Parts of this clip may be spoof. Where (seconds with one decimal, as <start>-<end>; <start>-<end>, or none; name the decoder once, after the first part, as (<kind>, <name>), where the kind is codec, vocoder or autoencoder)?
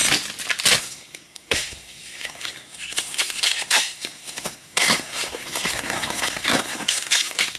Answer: 0.8-7.6 (codec, SNAC)